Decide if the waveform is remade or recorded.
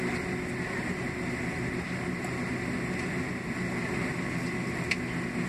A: recorded